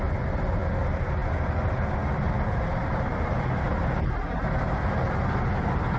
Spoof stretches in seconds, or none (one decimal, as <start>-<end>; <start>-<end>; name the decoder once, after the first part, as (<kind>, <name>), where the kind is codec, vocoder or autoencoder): none